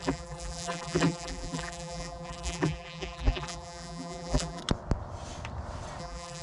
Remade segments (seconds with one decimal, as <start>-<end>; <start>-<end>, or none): 0.0-4.6; 6.0-6.4